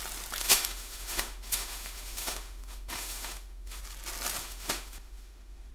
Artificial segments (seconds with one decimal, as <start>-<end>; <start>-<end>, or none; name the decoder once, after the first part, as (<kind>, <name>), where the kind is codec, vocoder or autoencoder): 0.4-3.8 (autoencoder, DAC-VAE); 4.4-5.7